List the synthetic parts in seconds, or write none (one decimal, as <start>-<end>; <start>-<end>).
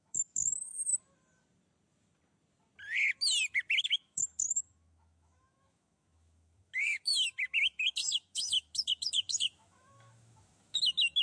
0.0-0.9; 3.8-11.2